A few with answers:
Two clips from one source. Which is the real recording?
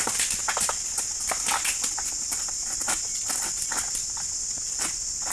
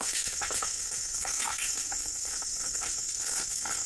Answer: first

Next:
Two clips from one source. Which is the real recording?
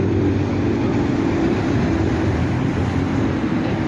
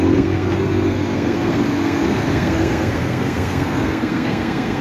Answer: first